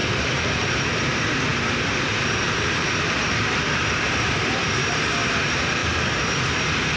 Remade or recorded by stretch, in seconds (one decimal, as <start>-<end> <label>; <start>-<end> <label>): 0.0-5.8 remade; 5.8-6.4 recorded; 6.4-7.0 remade